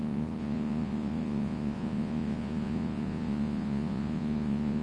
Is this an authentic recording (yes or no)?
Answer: no